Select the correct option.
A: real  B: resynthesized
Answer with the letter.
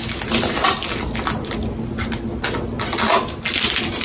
A